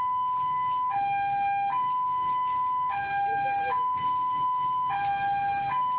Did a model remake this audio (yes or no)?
no